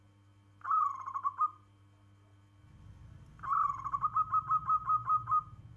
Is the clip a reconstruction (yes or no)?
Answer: no